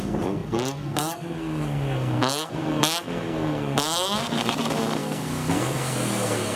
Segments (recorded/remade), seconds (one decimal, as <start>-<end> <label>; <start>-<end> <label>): 0.0-6.6 remade